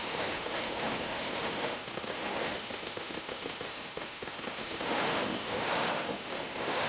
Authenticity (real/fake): fake